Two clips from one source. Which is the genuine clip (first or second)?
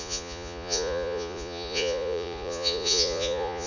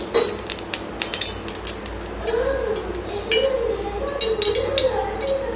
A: second